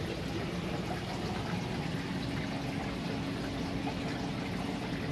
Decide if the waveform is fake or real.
real